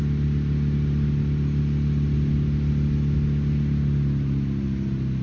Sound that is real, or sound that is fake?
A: real